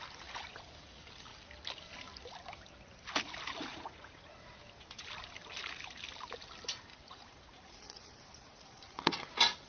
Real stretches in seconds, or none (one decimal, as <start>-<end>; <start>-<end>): 0.0-3.7; 4.5-6.9